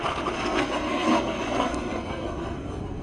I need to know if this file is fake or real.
fake